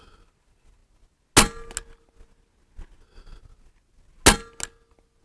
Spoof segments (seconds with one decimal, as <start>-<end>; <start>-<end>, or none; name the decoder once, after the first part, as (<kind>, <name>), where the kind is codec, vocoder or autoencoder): none